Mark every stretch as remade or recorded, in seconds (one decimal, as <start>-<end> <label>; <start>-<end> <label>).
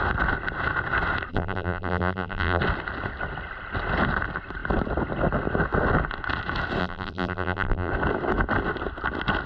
0.0-1.3 recorded; 1.3-2.6 remade; 2.6-6.8 recorded; 6.8-7.9 remade; 7.9-9.5 recorded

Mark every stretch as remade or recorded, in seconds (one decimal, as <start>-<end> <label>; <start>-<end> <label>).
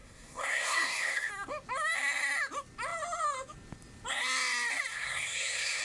0.0-1.3 remade; 1.3-4.9 recorded; 4.9-5.8 remade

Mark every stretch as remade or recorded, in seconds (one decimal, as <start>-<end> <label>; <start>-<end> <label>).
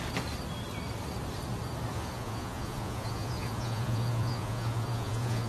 0.0-1.9 recorded; 1.9-5.5 remade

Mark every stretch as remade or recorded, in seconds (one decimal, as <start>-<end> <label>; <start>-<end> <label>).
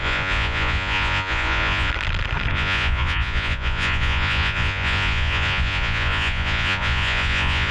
0.0-1.9 remade; 1.9-2.5 recorded; 2.5-7.7 remade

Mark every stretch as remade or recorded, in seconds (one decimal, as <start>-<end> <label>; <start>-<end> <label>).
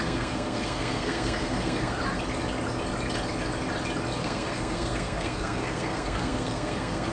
0.0-2.0 remade; 2.0-4.2 recorded; 4.2-7.1 remade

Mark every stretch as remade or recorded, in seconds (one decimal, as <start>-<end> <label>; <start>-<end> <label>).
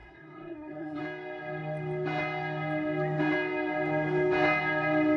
0.0-1.0 remade; 1.0-5.2 recorded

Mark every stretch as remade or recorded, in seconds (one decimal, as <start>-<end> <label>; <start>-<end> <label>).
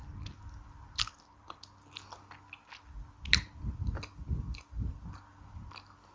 0.0-6.1 recorded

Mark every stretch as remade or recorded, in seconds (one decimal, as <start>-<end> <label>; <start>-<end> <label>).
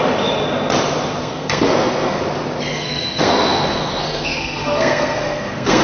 0.0-1.2 recorded; 1.2-2.2 remade; 2.2-2.7 recorded; 2.7-5.8 remade